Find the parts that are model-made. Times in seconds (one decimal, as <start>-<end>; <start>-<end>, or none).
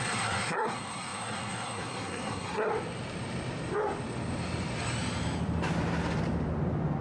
0.0-2.7